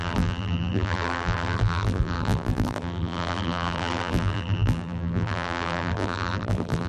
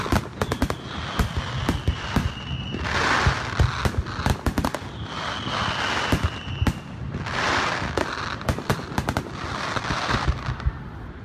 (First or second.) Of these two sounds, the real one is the second